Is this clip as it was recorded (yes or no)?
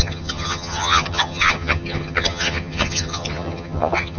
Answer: no